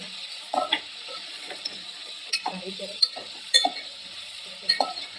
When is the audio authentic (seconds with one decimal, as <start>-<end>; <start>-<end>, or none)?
none